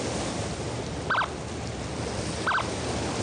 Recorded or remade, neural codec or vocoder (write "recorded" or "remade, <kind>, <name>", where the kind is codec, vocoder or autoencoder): recorded